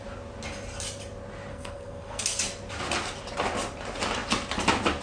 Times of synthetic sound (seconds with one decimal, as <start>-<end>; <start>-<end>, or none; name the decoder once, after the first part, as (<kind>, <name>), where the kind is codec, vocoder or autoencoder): 1.5-2.4 (codec, SNAC)